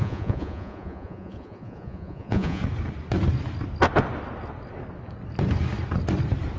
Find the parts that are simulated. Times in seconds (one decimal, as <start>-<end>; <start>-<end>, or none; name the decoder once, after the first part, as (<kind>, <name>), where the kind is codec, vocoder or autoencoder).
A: 0.0-2.6 (vocoder, Vocos)